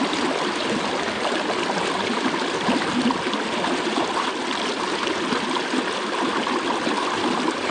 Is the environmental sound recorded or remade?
recorded